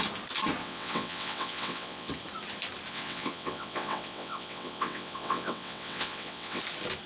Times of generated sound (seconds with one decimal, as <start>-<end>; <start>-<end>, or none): 0.6-2.1; 2.9-6.6